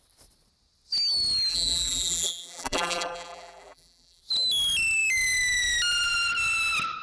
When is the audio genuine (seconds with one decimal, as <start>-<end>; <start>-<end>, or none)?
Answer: 0.0-1.5; 4.2-7.0